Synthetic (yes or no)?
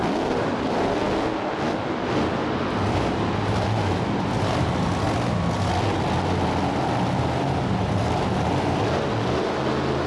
no